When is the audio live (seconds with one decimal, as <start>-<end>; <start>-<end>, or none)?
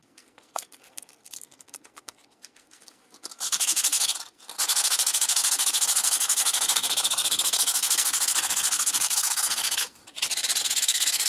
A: 10.0-10.6